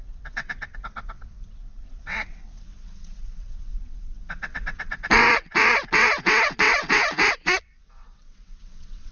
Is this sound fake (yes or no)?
yes